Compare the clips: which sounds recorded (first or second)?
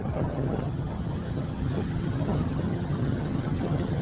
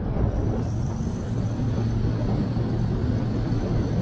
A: second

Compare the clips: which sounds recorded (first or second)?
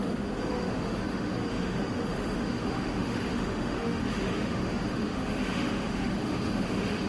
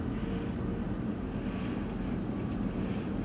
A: second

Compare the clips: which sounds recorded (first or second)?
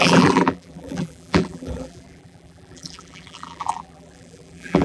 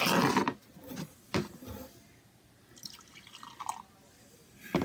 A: second